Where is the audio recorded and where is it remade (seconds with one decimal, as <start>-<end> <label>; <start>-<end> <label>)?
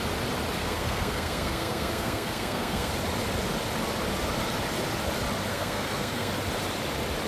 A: 0.0-0.6 recorded; 0.6-2.9 remade; 2.9-5.5 recorded; 5.5-6.3 remade; 6.3-7.3 recorded